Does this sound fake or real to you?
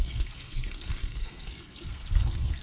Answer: fake